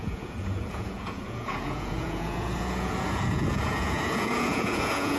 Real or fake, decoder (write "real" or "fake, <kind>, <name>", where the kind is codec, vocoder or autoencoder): fake, vocoder, Vocos